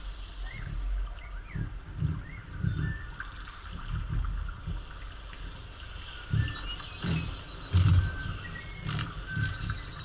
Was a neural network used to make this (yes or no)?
no